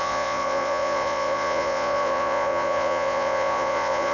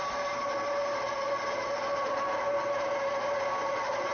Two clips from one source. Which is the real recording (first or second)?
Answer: second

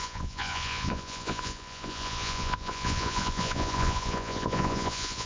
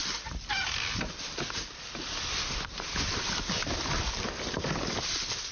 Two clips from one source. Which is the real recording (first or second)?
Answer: second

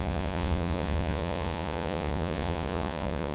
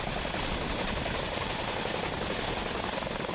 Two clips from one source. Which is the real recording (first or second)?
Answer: second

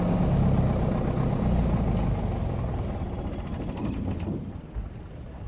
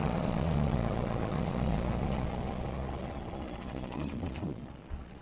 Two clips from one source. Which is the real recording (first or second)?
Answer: first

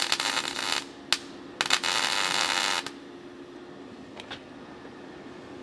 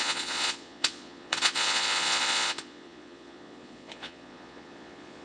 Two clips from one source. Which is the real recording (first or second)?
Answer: first